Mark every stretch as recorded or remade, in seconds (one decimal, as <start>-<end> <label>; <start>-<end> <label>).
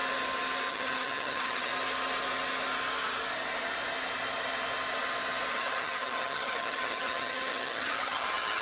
0.0-0.7 recorded; 0.7-1.7 remade; 1.7-5.5 recorded; 5.5-8.6 remade